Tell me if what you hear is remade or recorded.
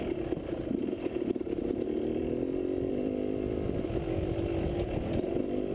recorded